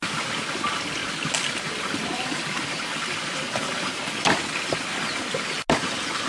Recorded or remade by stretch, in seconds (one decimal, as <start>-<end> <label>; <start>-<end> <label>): 0.0-6.3 recorded